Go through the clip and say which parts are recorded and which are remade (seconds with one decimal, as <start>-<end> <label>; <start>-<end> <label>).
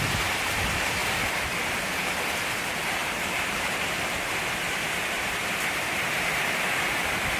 0.0-7.4 remade